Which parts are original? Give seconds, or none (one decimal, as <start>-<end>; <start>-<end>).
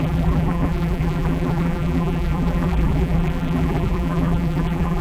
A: none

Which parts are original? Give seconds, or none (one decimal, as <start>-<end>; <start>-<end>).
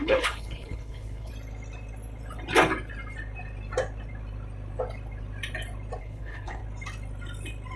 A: 1.3-6.0; 6.6-7.8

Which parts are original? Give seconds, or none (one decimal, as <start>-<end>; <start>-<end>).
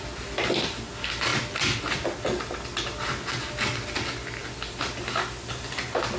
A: 0.0-6.2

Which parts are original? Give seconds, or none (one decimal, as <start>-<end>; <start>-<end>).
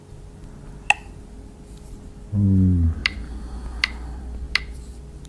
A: 0.0-5.3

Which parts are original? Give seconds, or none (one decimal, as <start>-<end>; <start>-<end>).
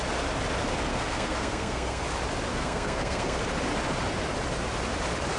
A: 0.0-0.9; 2.0-2.5; 3.4-5.4